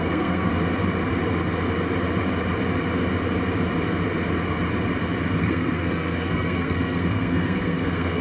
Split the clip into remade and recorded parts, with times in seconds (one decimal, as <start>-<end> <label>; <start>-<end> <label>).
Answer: 0.0-0.5 remade; 0.5-5.4 recorded; 5.4-8.2 remade